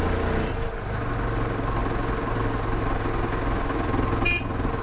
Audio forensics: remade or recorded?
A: recorded